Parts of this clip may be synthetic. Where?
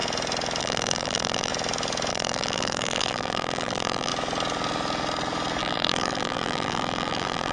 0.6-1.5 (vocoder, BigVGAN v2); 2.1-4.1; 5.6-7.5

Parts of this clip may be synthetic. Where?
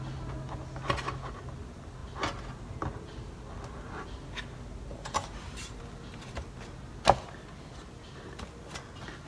4.9-5.8 (vocoder, BigVGAN v2)